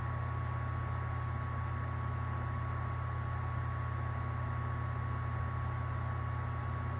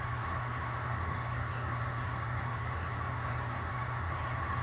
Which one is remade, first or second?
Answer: second